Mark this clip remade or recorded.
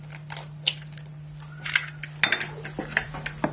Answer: recorded